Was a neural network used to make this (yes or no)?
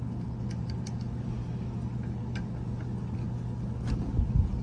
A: no